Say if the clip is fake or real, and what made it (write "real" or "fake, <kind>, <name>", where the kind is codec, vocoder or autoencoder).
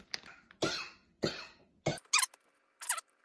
real